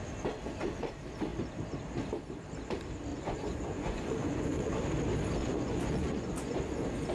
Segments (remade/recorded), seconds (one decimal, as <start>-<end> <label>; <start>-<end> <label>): 0.0-3.1 recorded; 3.1-4.7 remade; 4.7-5.4 recorded; 5.4-6.6 remade; 6.6-7.1 recorded